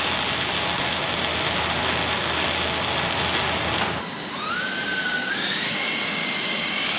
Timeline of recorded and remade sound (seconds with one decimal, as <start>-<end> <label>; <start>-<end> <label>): 0.0-5.2 recorded; 5.2-7.0 remade